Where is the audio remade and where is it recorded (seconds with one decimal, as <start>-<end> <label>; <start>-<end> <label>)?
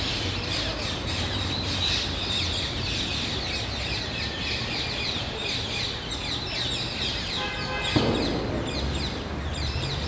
0.0-10.1 recorded